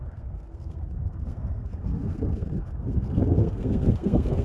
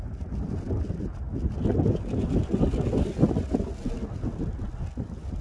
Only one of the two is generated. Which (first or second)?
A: first